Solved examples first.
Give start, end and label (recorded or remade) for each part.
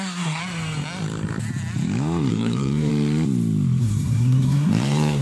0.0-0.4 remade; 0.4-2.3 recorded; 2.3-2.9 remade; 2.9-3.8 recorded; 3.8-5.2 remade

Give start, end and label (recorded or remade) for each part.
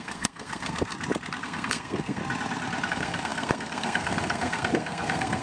0.0-0.9 remade; 0.9-1.4 recorded; 1.4-2.2 remade; 2.2-2.9 recorded; 2.9-5.4 remade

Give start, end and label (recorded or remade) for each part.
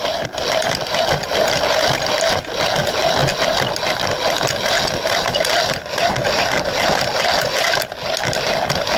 0.0-9.0 recorded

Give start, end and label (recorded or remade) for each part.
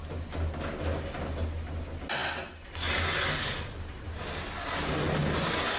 0.0-5.8 recorded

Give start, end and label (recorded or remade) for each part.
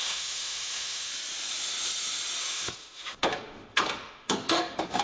0.0-1.1 remade; 1.1-2.4 recorded; 2.4-5.0 remade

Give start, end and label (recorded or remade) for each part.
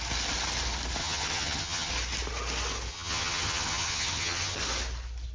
0.0-1.0 recorded; 1.0-1.9 remade; 1.9-2.9 recorded; 2.9-4.6 remade; 4.6-5.3 recorded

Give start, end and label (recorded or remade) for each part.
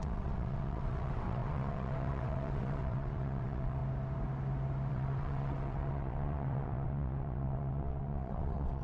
0.0-3.8 remade; 3.8-4.9 recorded; 4.9-8.8 remade